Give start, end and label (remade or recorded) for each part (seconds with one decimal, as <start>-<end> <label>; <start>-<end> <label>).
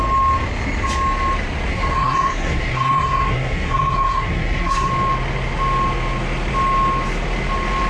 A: 0.0-1.7 recorded; 1.7-4.9 remade; 4.9-7.9 recorded